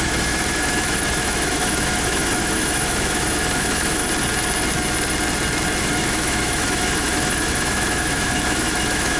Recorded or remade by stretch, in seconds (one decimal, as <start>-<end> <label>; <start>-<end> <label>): 0.0-4.0 remade; 4.0-5.8 recorded; 5.8-9.2 remade